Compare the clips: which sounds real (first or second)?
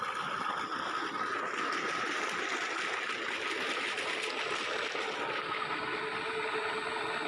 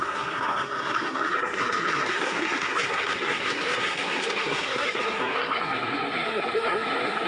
first